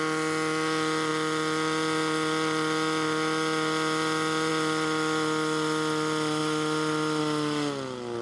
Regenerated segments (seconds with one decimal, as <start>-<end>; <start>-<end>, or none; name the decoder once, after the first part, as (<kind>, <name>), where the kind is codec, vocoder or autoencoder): none